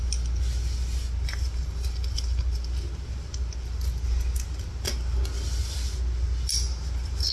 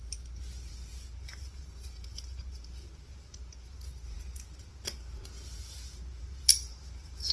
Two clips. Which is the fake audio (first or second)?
second